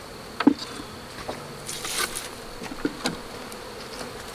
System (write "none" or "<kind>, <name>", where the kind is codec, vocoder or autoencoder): none